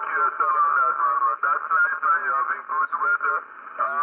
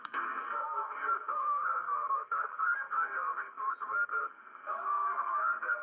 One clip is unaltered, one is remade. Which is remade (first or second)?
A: second